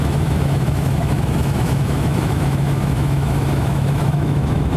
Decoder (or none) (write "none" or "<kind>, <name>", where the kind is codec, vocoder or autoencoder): autoencoder, DAC-VAE